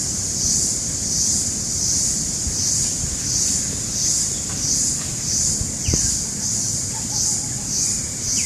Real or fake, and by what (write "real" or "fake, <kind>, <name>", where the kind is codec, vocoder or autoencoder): real